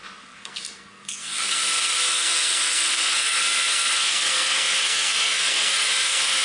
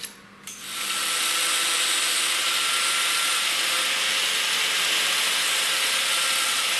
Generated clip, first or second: first